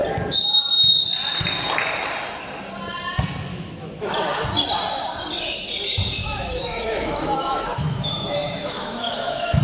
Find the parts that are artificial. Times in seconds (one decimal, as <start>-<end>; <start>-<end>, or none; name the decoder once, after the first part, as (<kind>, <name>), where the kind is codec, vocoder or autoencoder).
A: 3.5-4.1 (autoencoder, DAC-VAE); 6.2-9.6